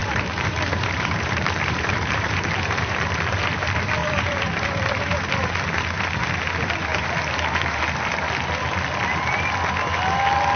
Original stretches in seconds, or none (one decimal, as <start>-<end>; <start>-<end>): 2.5-4.0; 5.3-6.9; 7.8-10.6